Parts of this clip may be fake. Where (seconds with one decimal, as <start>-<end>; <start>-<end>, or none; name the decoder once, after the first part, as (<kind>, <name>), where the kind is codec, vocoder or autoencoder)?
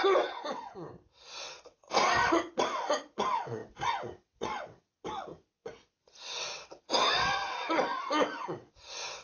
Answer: 0.0-9.2 (vocoder, WaveNeXt)